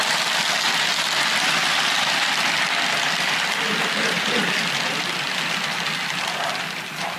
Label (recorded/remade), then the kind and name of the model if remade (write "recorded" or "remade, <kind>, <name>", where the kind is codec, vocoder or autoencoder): recorded